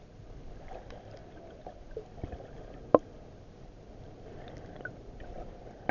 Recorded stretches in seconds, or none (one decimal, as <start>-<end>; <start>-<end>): 0.0-5.9